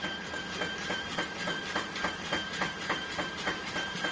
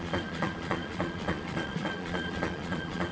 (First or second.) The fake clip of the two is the second